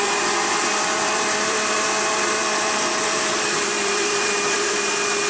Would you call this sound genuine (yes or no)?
no